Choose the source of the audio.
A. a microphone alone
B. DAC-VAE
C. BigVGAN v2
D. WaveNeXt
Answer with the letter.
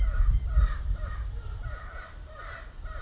C